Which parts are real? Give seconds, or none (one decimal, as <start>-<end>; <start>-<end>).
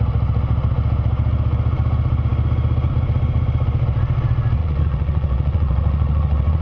0.0-4.6